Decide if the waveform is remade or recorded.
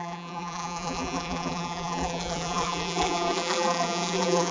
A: remade